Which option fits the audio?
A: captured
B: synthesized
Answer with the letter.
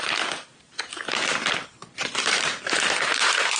B